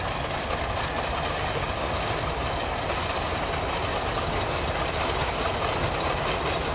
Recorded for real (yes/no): yes